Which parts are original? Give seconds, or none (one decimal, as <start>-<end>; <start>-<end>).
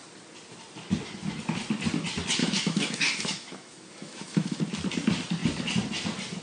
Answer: 0.0-2.4; 4.6-6.4